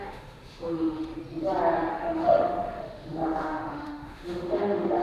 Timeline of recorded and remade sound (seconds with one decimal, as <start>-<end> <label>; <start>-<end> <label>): 0.0-1.2 remade; 1.2-1.9 recorded; 1.9-5.0 remade